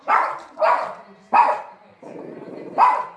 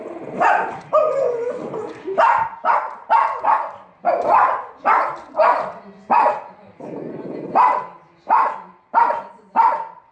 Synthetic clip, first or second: first